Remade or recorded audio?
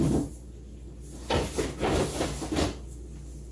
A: recorded